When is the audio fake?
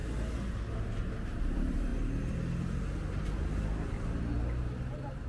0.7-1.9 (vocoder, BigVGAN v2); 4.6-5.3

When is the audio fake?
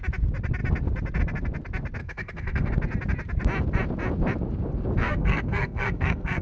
2.0-2.7 (codec, SNAC); 5.0-6.4